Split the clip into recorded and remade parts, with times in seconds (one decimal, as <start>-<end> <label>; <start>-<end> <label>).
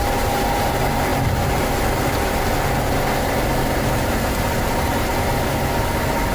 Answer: 0.0-6.3 recorded